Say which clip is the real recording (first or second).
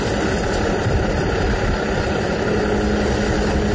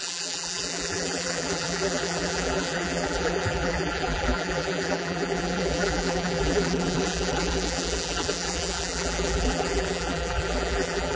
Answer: first